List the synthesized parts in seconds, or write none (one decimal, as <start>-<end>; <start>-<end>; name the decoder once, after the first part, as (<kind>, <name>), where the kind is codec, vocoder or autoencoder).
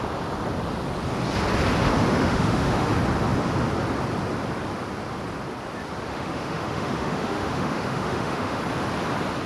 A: 2.1-2.9 (autoencoder, DAC-VAE); 6.1-8.6